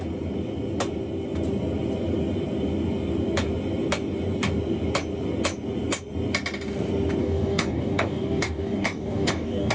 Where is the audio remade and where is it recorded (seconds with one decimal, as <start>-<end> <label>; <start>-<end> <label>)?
0.0-7.2 recorded; 7.2-9.7 remade